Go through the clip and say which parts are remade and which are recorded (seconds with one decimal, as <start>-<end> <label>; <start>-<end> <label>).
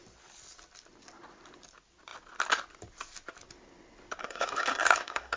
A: 0.0-4.2 recorded; 4.2-5.4 remade